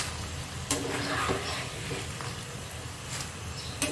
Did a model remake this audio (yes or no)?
no